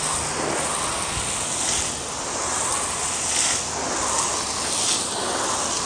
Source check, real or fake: real